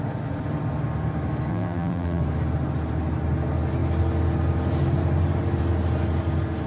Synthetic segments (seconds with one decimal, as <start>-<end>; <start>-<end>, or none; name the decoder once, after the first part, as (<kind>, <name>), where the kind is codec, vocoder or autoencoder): 1.5-2.2 (vocoder, BigVGAN v2)